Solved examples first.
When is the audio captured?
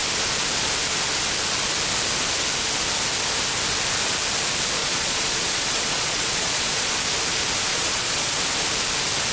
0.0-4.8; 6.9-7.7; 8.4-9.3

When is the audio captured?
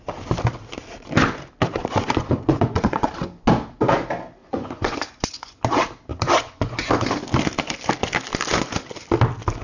0.0-1.8; 3.1-4.4; 5.6-6.1; 6.9-9.6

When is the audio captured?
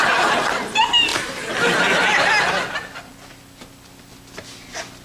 0.0-5.0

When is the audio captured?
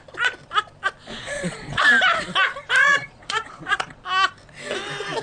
0.0-1.1; 1.8-2.8; 4.0-5.2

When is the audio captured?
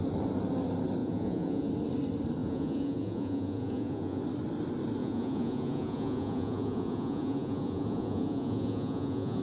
0.0-1.0; 1.7-2.4; 4.2-5.0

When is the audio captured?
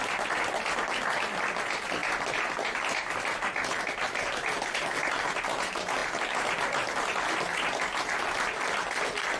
0.0-9.4